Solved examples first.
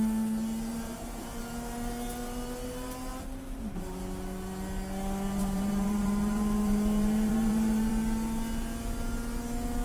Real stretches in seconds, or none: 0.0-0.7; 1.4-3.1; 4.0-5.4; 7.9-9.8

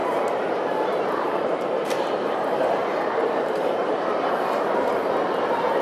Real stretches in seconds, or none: 5.0-5.8

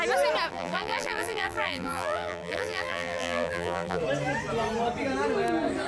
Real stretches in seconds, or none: 0.0-0.5; 4.0-5.9

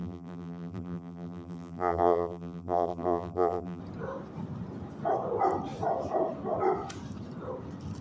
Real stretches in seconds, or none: 3.8-8.0

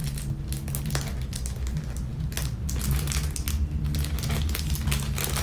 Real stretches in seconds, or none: 0.0-5.4

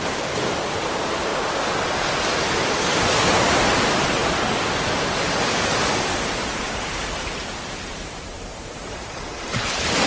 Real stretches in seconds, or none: 1.3-2.8; 4.2-6.5

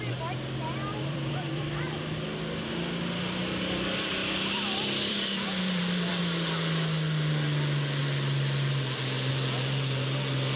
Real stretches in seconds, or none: 0.0-0.9; 1.6-4.2; 6.2-10.6